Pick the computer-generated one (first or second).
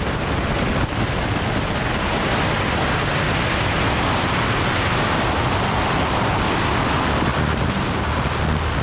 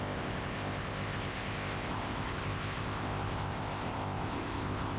second